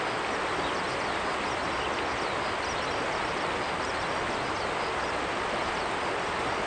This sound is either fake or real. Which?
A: real